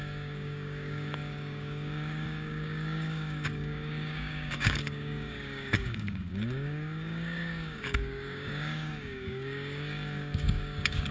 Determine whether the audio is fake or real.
fake